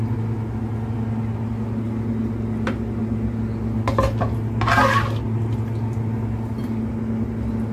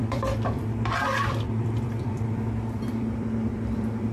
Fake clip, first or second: second